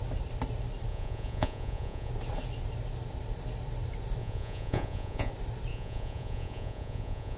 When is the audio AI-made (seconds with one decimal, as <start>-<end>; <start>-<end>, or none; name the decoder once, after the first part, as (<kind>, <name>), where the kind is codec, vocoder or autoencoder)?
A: 0.9-2.1 (vocoder, Vocos); 4.2-5.3; 5.7-7.4